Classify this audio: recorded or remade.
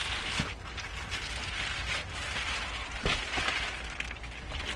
recorded